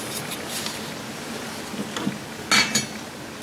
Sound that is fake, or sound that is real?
real